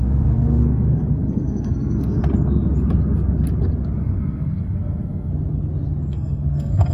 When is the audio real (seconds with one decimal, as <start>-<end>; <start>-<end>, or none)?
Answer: 2.2-4.0; 5.3-6.1